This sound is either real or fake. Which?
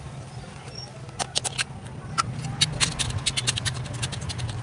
real